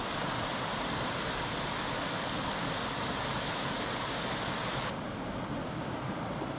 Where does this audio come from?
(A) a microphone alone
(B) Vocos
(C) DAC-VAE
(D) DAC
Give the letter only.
A